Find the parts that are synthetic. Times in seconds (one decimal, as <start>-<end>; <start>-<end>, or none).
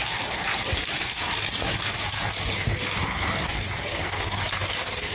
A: 3.9-4.4